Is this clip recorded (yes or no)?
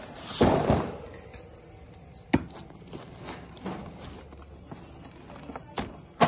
yes